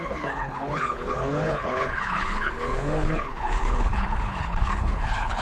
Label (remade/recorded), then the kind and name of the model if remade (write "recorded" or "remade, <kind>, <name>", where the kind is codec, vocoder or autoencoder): remade, codec, HILCodec